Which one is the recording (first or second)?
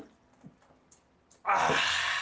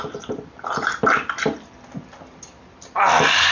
first